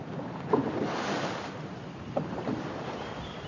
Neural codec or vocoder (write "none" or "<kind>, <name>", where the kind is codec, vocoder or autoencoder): none